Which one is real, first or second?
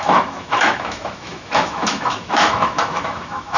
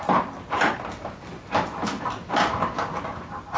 second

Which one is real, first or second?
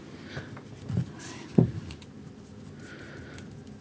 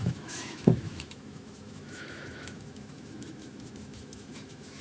first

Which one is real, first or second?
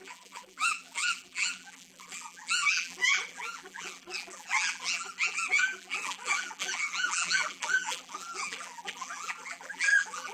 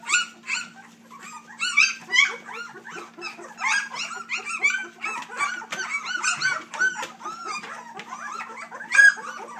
second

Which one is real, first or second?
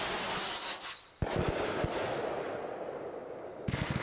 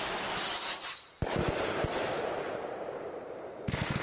first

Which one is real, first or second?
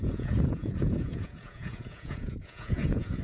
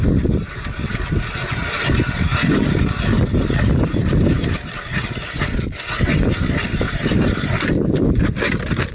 second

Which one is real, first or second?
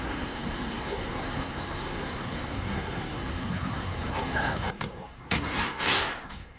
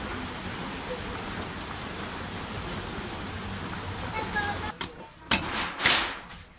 second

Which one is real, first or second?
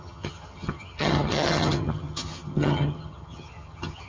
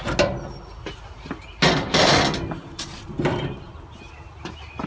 second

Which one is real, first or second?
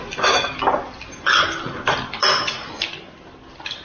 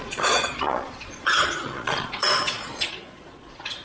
first